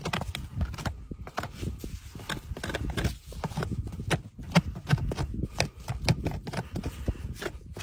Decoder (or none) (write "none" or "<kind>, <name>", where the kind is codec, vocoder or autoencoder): none